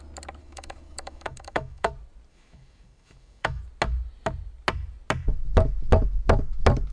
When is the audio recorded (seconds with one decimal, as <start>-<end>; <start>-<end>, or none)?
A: 0.0-0.4; 1.9-2.3; 3.6-6.9